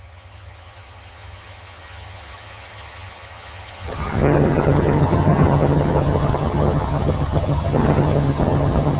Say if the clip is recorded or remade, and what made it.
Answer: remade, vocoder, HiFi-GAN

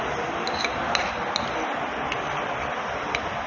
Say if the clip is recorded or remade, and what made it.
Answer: recorded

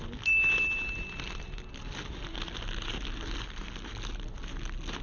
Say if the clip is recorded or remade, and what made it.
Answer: recorded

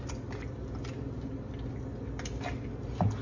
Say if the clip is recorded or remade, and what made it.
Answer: recorded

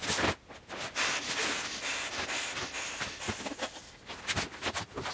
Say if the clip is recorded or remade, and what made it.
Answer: recorded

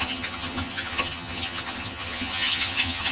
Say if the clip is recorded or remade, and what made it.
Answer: remade, vocoder, HiFi-GAN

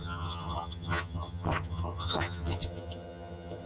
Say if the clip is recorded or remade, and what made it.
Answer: remade, vocoder, HiFi-GAN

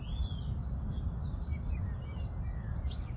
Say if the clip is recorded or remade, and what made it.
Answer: recorded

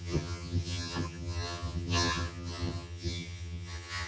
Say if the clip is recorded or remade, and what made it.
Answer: remade, vocoder, HiFi-GAN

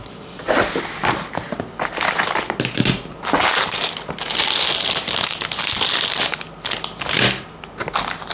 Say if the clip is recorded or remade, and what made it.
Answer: recorded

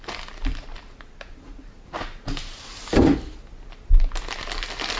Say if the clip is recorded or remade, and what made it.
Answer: recorded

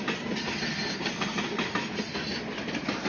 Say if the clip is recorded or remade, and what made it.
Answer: recorded